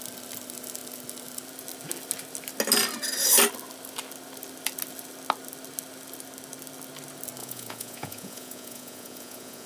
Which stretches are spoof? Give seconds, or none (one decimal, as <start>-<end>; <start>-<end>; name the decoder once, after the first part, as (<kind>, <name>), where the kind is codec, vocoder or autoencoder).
7.4-9.7 (vocoder, Vocos)